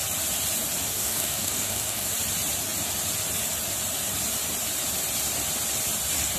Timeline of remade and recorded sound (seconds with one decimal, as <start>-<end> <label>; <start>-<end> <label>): 0.0-0.9 recorded; 0.9-2.1 remade; 2.1-6.4 recorded